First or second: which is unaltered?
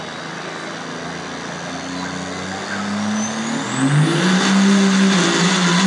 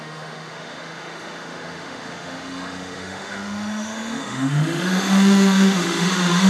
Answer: first